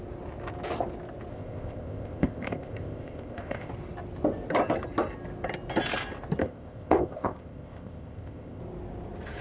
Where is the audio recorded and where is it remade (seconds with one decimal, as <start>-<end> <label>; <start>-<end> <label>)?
0.0-1.3 recorded; 1.3-3.7 remade; 3.7-6.4 recorded; 6.4-8.6 remade; 8.6-9.4 recorded